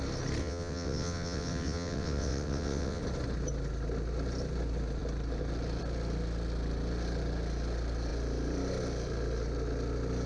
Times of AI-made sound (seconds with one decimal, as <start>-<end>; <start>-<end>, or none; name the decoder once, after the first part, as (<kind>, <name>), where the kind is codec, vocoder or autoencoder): 0.4-3.0 (vocoder, WaveNeXt)